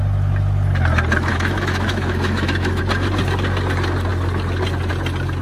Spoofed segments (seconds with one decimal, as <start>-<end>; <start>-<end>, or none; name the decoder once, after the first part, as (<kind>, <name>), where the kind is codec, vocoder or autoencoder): 1.3-2.8 (autoencoder, DAC-VAE)